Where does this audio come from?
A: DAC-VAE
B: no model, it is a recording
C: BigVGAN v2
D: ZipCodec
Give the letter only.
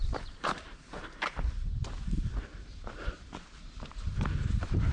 C